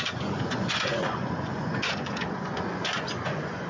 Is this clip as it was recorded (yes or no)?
no